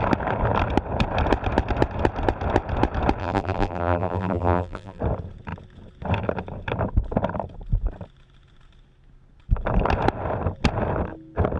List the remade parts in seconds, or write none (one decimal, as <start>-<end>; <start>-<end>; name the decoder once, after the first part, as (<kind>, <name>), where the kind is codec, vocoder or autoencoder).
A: 3.2-5.0 (vocoder, BigVGAN v2)

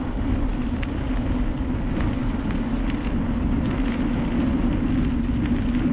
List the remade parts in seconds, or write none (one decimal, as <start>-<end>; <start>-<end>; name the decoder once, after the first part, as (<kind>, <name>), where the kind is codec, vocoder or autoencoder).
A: 0.5-1.1 (vocoder, BigVGAN v2)